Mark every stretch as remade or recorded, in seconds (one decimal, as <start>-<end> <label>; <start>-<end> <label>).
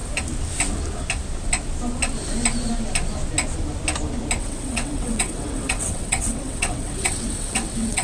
0.0-4.4 recorded; 4.4-8.0 remade